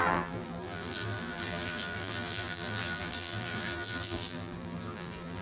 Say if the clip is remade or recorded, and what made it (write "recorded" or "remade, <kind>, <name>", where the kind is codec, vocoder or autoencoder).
remade, vocoder, BigVGAN v2